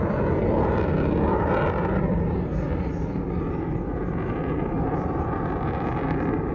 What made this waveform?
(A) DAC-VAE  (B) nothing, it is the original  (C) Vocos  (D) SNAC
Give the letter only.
B